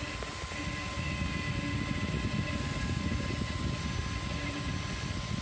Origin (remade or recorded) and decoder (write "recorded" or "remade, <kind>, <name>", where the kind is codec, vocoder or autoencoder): recorded